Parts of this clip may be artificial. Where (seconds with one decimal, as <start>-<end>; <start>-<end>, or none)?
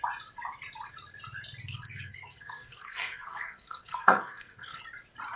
1.6-4.8